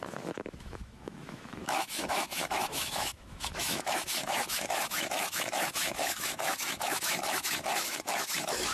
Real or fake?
fake